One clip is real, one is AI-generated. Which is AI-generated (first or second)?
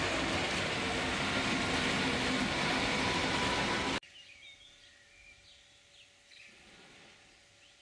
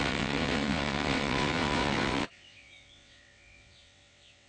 second